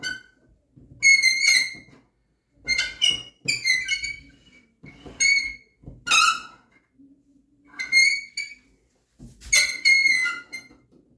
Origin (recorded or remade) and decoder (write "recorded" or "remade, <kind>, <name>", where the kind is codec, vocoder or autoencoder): recorded